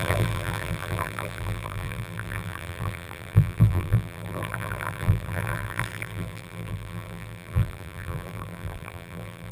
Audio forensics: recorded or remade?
remade